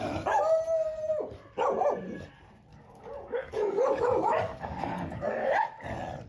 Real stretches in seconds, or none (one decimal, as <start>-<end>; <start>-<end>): 0.0-2.7; 5.5-6.3